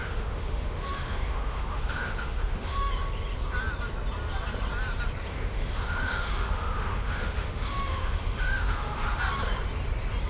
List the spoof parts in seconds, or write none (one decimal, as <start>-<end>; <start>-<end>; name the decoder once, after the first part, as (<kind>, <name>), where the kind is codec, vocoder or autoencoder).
0.0-2.9 (autoencoder, DAC-VAE); 5.3-9.2